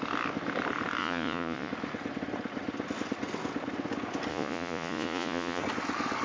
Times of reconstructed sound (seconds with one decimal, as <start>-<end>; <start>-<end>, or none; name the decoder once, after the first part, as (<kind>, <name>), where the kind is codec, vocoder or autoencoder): 1.0-1.7 (vocoder, Vocos); 4.3-5.6